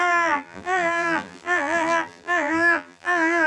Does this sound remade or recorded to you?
remade